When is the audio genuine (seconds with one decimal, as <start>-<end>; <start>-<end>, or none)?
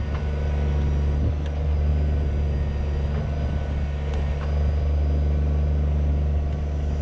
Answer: 0.0-7.0